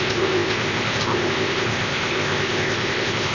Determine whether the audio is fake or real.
fake